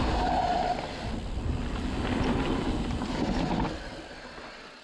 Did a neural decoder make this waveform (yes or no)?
no